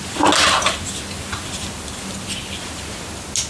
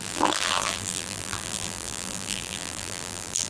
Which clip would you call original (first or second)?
first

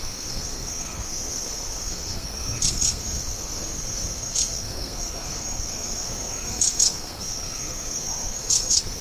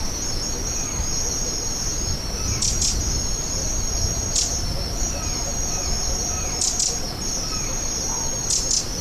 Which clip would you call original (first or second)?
second